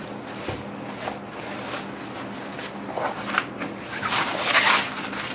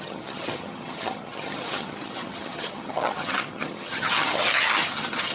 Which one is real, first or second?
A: first